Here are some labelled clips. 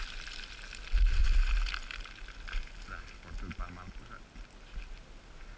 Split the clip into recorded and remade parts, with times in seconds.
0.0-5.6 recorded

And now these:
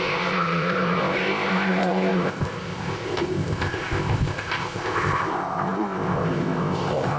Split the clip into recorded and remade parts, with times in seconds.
0.0-7.2 remade

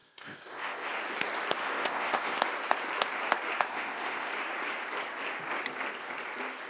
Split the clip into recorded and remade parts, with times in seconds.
0.0-0.9 remade; 0.9-1.6 recorded; 1.6-2.4 remade; 2.4-3.7 recorded; 3.7-4.3 remade; 4.3-6.7 recorded

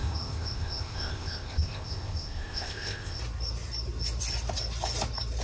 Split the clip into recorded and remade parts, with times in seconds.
0.0-3.2 remade; 3.2-5.4 recorded

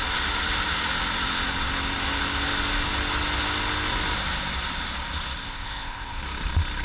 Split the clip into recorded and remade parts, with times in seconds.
0.0-5.4 recorded; 5.4-6.2 remade; 6.2-6.8 recorded

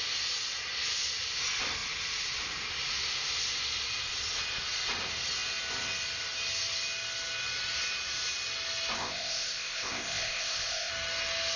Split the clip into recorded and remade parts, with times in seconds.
0.0-9.0 recorded; 9.0-10.9 remade; 10.9-11.6 recorded

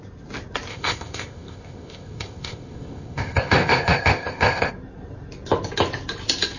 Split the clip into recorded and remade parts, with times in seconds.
0.0-0.7 recorded; 0.7-4.7 remade; 4.7-6.6 recorded